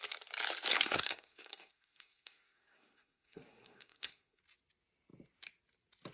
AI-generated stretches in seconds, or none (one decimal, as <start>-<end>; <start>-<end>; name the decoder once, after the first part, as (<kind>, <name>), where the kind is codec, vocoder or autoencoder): 0.7-4.4 (codec, SNAC)